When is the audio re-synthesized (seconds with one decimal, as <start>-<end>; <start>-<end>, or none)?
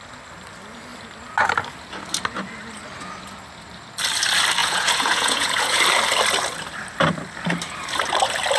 4.6-5.8